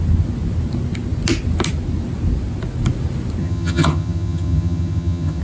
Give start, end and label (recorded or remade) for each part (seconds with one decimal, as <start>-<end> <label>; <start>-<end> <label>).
0.0-3.4 recorded; 3.4-5.4 remade